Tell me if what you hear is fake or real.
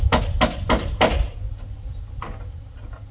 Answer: real